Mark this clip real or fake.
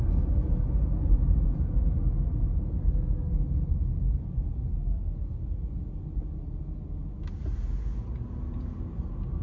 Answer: real